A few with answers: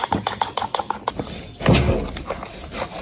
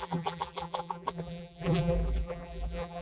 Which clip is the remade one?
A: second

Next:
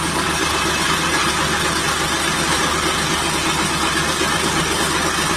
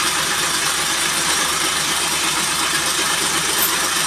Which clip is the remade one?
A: second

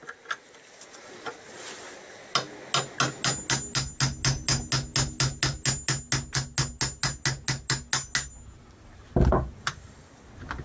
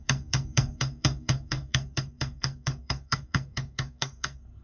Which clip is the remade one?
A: second